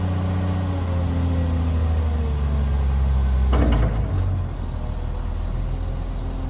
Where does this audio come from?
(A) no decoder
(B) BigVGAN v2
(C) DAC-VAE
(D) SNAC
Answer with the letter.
A